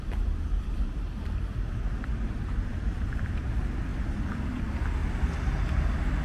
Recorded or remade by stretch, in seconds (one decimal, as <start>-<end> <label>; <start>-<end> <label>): 0.0-6.2 recorded